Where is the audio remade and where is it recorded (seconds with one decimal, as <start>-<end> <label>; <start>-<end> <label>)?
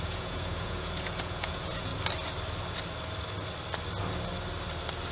0.0-1.9 remade; 1.9-5.1 recorded